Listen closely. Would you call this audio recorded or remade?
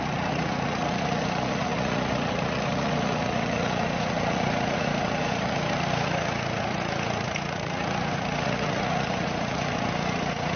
remade